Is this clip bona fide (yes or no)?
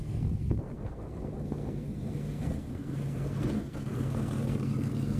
no